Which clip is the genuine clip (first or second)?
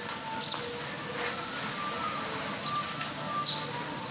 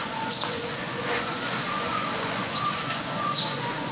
first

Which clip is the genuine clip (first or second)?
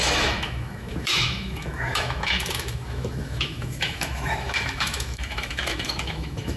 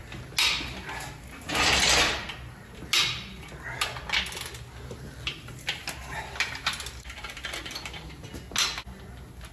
second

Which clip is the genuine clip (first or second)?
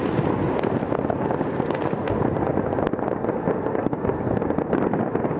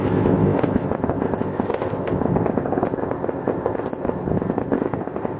first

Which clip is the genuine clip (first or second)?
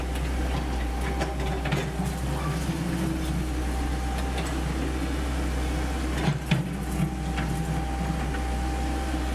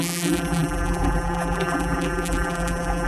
first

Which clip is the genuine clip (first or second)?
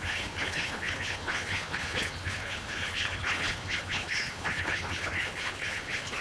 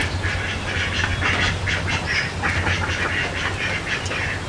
second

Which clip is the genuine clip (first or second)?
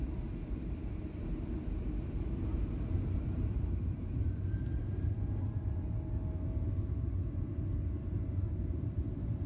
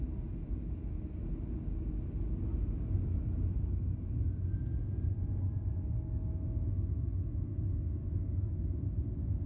second